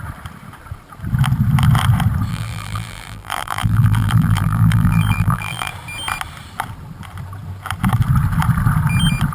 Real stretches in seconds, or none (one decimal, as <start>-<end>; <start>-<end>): 0.0-2.3; 5.7-9.3